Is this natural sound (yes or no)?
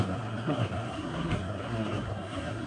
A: no